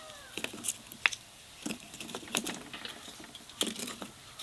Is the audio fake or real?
real